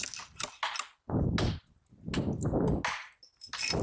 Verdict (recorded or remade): recorded